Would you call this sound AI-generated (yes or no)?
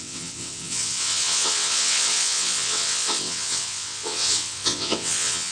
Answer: yes